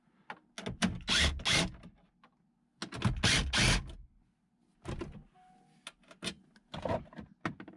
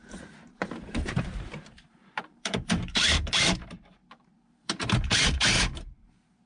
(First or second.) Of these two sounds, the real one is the first